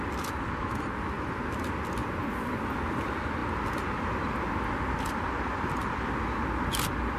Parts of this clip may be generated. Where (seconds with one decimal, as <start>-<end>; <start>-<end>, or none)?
none